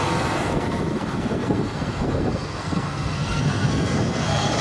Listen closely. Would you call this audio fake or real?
fake